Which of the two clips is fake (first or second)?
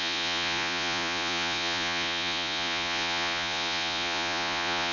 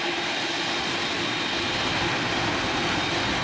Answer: first